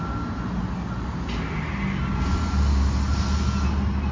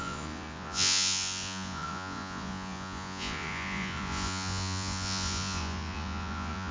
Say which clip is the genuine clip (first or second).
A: first